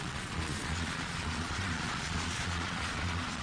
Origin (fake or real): fake